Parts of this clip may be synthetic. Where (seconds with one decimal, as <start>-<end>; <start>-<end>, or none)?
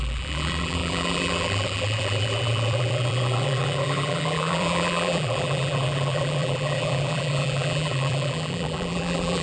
0.0-9.4